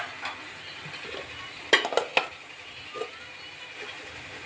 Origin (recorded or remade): recorded